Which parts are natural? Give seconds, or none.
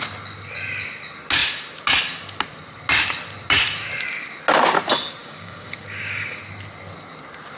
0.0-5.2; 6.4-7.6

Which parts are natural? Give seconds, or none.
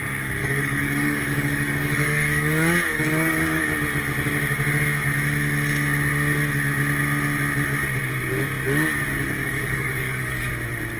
0.0-0.4; 3.7-9.4; 10.5-11.0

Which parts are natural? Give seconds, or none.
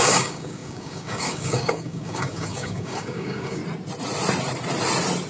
3.6-5.3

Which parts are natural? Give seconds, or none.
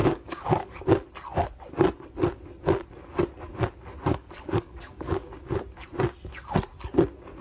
0.8-4.1; 5.3-7.4